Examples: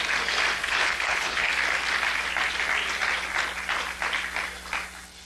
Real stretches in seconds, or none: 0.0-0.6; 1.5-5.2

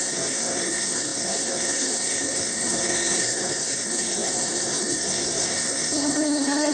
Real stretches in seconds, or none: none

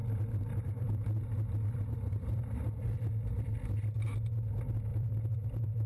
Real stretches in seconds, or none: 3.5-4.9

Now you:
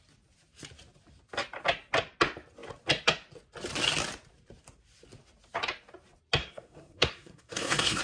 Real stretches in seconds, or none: 0.0-6.4